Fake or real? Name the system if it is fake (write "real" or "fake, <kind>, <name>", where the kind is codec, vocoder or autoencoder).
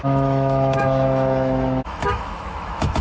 fake, autoencoder, DAC-VAE